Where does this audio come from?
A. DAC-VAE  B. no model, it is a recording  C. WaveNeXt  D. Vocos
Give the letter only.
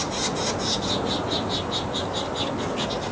B